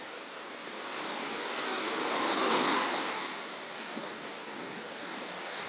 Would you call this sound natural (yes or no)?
no